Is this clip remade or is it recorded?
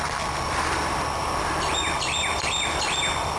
recorded